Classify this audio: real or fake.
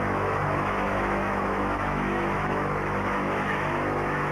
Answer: fake